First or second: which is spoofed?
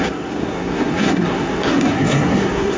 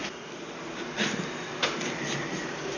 first